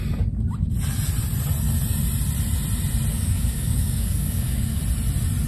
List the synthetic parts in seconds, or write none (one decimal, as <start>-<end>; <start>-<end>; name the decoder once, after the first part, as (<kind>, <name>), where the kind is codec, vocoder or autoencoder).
3.1-4.8 (codec, DAC)